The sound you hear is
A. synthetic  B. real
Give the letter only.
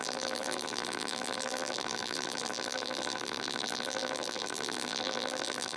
A